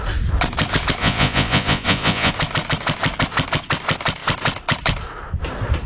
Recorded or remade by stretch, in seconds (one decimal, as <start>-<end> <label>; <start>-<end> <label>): 0.0-1.0 recorded; 1.0-2.3 remade; 2.3-5.9 recorded